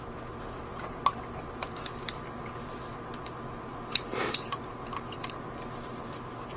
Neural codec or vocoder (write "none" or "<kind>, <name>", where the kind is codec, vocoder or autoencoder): vocoder, BigVGAN v2